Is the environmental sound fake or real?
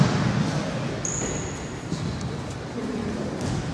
real